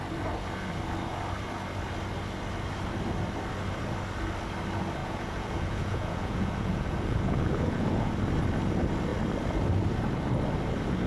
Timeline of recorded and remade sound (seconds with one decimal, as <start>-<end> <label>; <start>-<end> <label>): 0.0-5.0 recorded; 5.0-8.1 remade; 8.1-11.1 recorded